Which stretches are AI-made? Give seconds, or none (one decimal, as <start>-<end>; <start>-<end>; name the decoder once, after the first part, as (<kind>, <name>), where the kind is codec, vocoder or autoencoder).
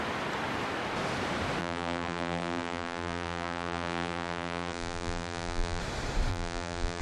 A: 1.6-5.8 (vocoder, BigVGAN v2); 6.3-7.0